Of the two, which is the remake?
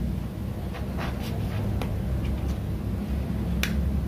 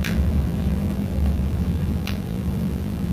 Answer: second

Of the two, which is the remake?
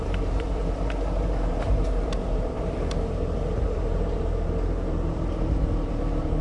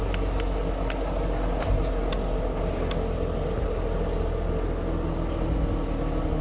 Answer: first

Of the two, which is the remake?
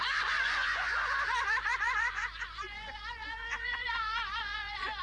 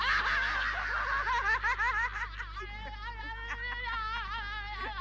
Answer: first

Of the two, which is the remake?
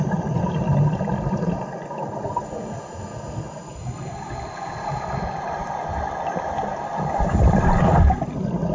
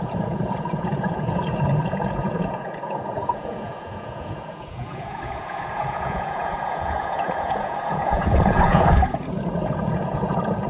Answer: second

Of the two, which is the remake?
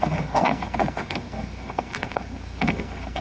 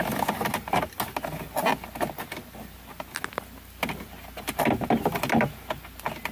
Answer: first